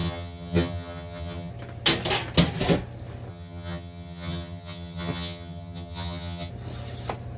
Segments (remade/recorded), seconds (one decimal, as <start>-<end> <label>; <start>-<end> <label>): 0.0-1.5 remade; 1.5-3.3 recorded; 3.3-6.5 remade; 6.5-7.4 recorded